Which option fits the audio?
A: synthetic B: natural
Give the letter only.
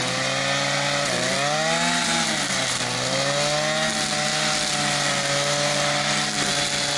B